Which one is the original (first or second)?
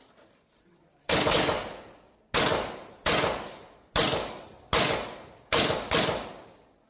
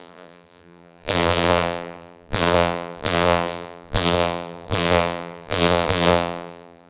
first